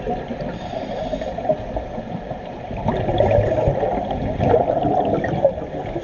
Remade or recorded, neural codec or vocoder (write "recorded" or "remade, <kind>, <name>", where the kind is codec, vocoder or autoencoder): recorded